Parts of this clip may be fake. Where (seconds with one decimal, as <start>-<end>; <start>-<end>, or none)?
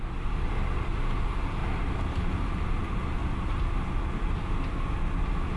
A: 1.6-2.5; 3.2-3.9